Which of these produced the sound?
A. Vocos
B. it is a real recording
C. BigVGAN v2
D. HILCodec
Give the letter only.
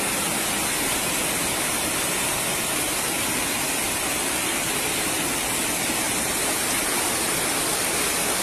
B